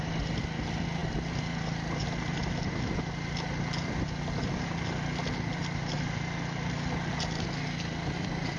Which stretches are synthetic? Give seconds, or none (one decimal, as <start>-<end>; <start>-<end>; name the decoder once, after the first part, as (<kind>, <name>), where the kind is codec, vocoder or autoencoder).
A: none